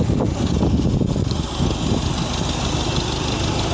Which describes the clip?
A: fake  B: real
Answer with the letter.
B